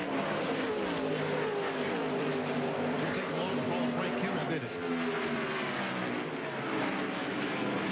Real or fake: real